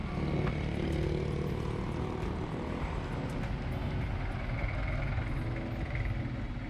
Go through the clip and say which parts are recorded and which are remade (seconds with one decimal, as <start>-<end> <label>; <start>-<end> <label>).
0.0-6.7 recorded